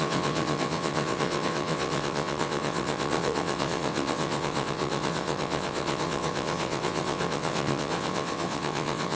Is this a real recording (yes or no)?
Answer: no